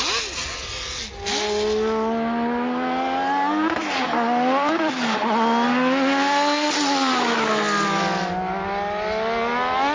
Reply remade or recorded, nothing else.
recorded